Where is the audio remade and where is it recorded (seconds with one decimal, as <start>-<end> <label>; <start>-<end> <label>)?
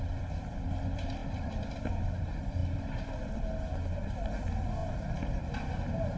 0.0-6.2 recorded